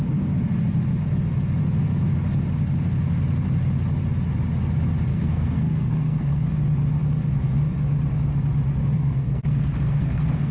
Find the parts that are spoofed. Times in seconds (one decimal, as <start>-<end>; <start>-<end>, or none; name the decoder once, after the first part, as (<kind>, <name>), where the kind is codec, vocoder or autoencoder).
5.1-6.5 (codec, SNAC); 8.8-10.5